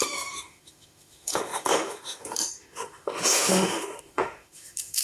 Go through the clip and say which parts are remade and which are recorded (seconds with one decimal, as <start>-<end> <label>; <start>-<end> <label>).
0.0-5.0 remade